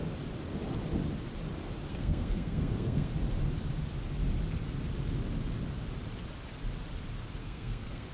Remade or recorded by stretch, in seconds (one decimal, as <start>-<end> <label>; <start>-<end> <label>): 0.0-1.9 recorded; 1.9-3.1 remade; 3.1-7.4 recorded; 7.4-8.1 remade